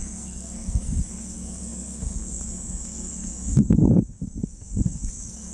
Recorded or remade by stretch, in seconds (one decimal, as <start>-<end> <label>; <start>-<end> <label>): 0.0-5.5 remade